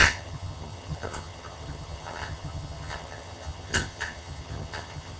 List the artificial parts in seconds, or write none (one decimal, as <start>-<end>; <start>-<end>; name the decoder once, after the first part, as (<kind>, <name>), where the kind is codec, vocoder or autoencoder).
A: 0.0-5.2 (vocoder, HiFi-GAN)